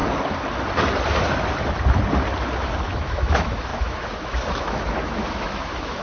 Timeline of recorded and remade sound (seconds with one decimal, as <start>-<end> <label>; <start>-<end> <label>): 0.0-2.8 recorded; 2.8-6.0 remade